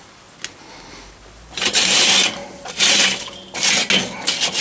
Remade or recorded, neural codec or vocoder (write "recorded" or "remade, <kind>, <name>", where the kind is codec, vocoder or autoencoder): recorded